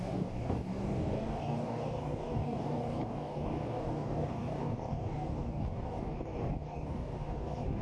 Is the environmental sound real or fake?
fake